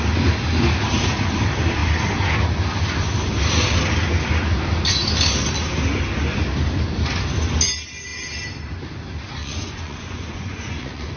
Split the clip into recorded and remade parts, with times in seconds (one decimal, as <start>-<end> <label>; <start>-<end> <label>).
0.0-9.4 recorded; 9.4-11.2 remade